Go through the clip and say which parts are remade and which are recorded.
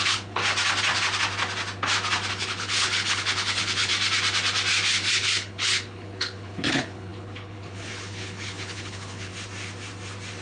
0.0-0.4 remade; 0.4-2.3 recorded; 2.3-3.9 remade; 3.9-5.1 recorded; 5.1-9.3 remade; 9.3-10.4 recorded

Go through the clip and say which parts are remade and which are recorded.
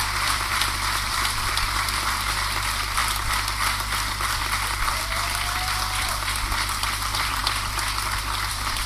0.0-3.0 remade; 3.0-4.3 recorded; 4.3-7.4 remade; 7.4-8.5 recorded; 8.5-8.9 remade